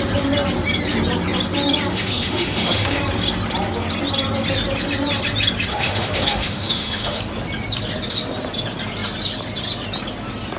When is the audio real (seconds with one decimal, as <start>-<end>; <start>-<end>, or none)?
0.0-1.9; 3.0-5.7; 7.2-10.6